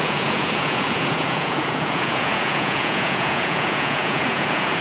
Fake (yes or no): yes